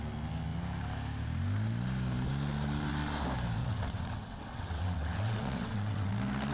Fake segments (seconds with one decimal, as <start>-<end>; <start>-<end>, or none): 3.6-6.1

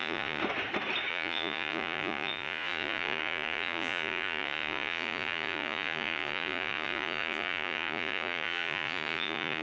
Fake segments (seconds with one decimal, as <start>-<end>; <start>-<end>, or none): 0.0-0.4; 1.1-9.6

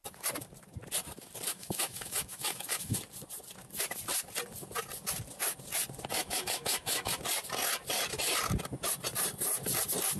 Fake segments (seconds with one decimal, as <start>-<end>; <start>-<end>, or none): 1.5-3.0; 6.2-7.1

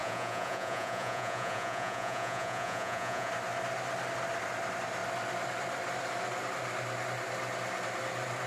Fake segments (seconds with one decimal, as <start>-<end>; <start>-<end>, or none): 0.0-3.3